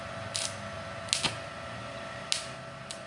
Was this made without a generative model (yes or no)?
yes